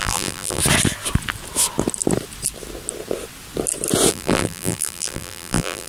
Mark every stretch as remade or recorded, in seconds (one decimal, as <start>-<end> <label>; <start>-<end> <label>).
0.0-0.6 remade; 0.6-4.1 recorded; 4.1-5.9 remade